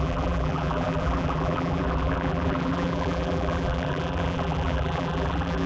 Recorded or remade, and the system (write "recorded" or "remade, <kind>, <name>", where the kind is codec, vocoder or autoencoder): remade, vocoder, BigVGAN v2